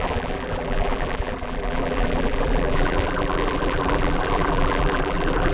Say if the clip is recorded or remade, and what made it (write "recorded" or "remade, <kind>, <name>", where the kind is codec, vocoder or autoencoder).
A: remade, vocoder, BigVGAN v2